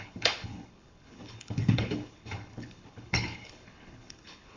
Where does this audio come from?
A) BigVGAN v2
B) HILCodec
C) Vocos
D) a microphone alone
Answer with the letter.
B